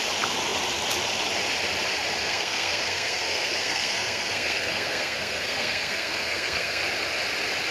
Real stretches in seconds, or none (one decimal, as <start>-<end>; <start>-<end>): 0.0-2.2; 6.8-7.7